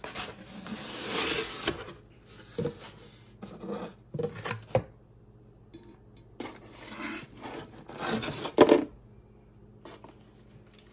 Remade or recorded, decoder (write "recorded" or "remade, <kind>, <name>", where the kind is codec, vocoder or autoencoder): recorded